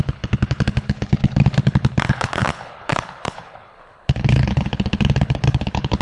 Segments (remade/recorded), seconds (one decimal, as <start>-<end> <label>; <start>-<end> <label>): 0.0-6.0 remade